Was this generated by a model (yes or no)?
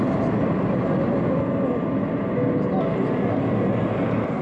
no